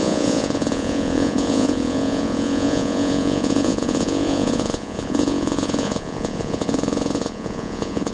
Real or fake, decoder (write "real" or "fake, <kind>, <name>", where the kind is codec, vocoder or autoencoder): fake, vocoder, Vocos